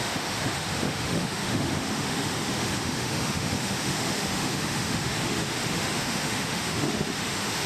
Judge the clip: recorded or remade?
remade